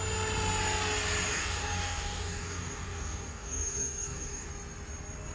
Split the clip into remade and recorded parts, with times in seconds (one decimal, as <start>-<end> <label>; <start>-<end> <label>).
0.0-1.3 recorded; 1.3-4.5 remade; 4.5-5.3 recorded